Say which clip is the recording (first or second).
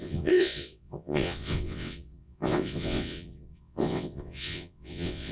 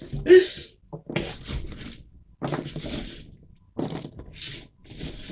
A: second